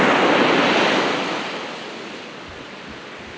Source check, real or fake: real